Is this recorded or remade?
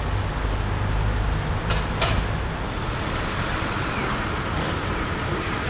recorded